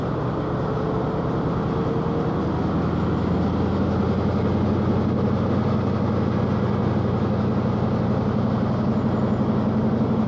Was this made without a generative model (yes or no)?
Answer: yes